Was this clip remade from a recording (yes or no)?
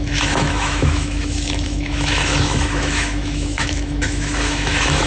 yes